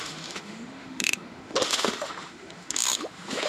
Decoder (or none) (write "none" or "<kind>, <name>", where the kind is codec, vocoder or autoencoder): autoencoder, DAC-VAE